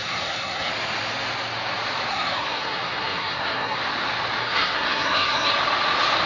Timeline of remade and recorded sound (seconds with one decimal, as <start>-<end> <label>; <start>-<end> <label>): 0.0-0.7 remade; 0.7-2.1 recorded; 2.1-3.8 remade; 3.8-4.4 recorded; 4.4-5.5 remade; 5.5-6.3 recorded